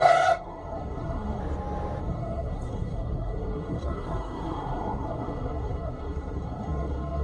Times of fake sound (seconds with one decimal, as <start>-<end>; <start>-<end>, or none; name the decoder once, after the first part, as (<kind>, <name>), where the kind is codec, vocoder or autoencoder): 0.0-1.4 (codec, SNAC); 2.0-7.2